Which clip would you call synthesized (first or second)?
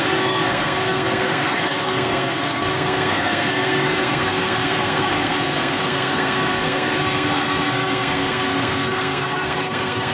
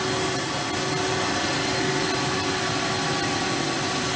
first